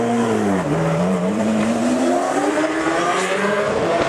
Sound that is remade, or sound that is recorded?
remade